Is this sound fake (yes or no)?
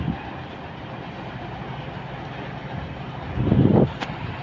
no